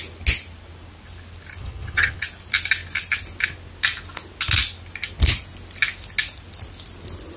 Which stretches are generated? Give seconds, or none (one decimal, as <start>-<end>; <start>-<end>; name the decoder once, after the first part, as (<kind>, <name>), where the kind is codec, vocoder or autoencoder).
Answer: 1.6-2.2 (vocoder, HiFi-GAN)